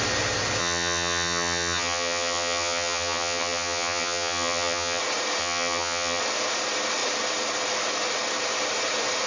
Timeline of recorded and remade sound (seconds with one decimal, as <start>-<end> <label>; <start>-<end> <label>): 0.0-0.6 recorded; 0.6-5.0 remade; 5.0-5.4 recorded; 5.4-6.2 remade; 6.2-9.3 recorded